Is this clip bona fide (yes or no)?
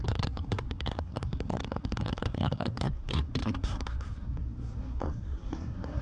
no